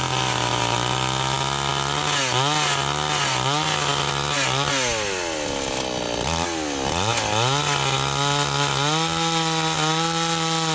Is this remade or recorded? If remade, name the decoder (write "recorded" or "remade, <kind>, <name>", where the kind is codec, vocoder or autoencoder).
recorded